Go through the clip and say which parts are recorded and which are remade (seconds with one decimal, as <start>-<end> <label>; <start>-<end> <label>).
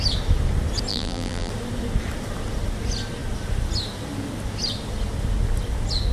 0.0-0.9 recorded; 0.9-1.5 remade; 1.5-6.1 recorded